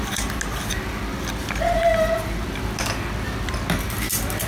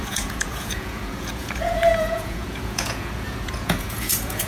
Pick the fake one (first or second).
second